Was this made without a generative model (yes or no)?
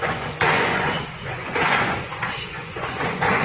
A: no